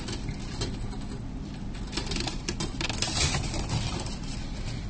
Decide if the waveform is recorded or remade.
recorded